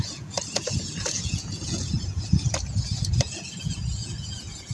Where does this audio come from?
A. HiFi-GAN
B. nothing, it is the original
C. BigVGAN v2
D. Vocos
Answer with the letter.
D